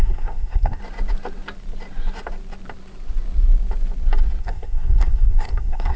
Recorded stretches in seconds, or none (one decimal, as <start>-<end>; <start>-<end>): 0.8-4.4

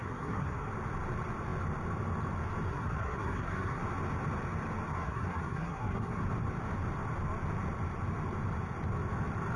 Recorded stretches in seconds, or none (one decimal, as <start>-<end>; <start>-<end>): 0.7-2.7; 3.8-4.9; 6.2-9.6

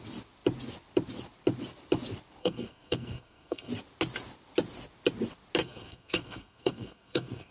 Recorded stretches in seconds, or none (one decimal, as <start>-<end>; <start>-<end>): 0.0-2.4; 3.7-5.6

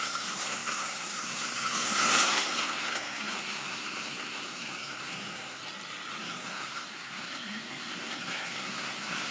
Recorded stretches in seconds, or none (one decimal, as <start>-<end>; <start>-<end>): 5.6-6.2

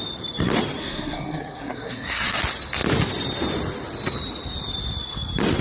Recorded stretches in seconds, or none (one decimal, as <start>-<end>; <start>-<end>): 0.0-0.8; 2.4-5.6

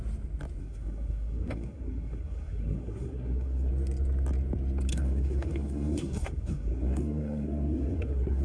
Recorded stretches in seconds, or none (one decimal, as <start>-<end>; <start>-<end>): 0.0-0.6; 3.7-4.9

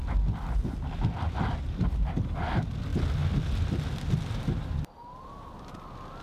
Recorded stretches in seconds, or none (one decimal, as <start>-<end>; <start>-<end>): 0.0-6.2